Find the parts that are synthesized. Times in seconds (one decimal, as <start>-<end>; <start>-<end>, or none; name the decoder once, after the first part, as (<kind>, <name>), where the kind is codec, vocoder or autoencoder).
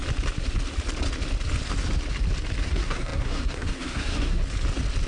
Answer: 2.6-4.4 (codec, SNAC)